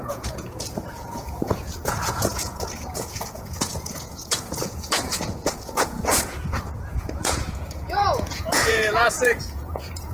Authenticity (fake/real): fake